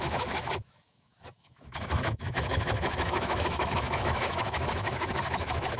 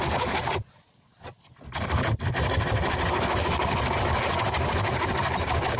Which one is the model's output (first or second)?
first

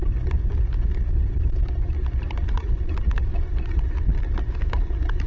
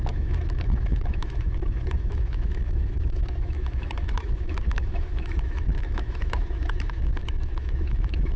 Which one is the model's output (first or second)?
second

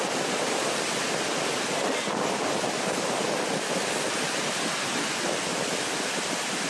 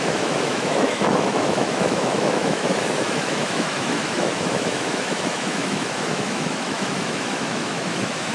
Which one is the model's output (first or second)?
second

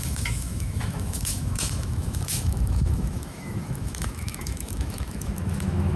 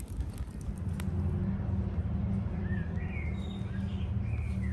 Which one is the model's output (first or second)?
first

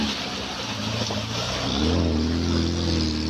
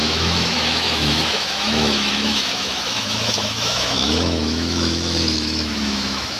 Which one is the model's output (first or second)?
second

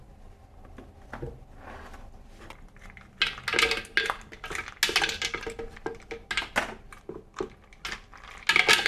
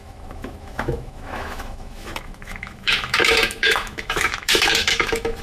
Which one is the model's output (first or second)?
second